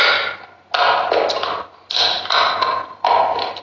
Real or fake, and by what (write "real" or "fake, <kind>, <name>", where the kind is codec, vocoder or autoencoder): real